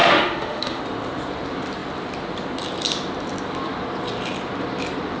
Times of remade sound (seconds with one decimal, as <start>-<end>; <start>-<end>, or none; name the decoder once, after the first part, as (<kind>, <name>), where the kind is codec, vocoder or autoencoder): 0.0-0.8 (autoencoder, DAC-VAE)